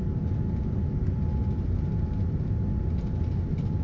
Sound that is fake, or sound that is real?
real